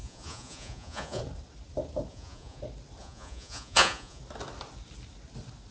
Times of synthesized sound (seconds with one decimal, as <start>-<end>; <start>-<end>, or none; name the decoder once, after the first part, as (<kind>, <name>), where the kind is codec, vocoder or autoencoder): 0.0-1.2 (vocoder, Vocos); 2.1-2.6; 3.0-4.2